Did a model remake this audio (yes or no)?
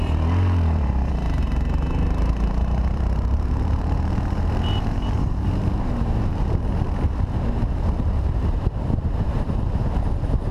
yes